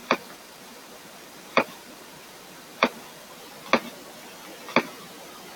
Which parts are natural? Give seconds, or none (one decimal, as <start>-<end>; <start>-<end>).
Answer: 3.4-5.6